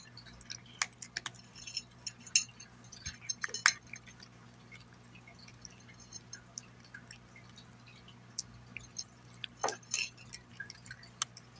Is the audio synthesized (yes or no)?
no